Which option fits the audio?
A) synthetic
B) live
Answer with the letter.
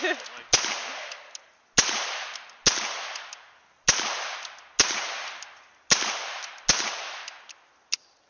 B